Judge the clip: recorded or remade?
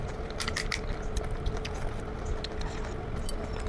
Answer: recorded